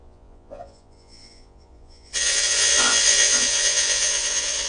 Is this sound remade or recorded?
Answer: remade